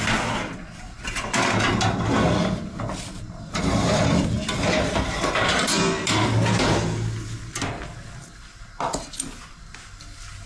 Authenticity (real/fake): real